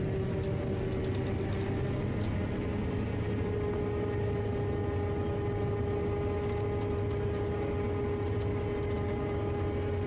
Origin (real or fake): real